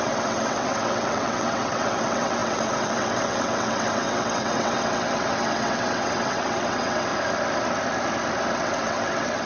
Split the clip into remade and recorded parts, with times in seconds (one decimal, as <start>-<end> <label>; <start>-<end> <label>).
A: 0.0-7.1 remade; 7.1-8.5 recorded; 8.5-9.5 remade

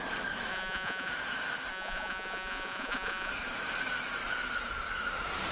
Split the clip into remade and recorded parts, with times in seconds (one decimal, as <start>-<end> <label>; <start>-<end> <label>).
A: 0.0-0.5 recorded; 0.5-1.1 remade; 1.1-1.7 recorded; 1.7-3.3 remade; 3.3-5.5 recorded